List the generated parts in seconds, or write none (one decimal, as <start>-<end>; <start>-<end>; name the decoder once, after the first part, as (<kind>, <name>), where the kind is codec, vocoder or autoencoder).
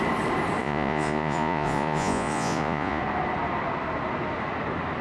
0.6-3.0 (vocoder, Vocos)